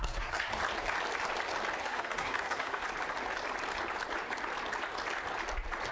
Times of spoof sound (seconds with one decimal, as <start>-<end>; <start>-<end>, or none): 0.0-0.5; 1.8-2.8